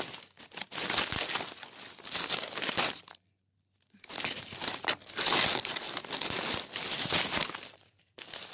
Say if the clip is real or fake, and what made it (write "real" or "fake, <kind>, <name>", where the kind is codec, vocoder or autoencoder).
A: real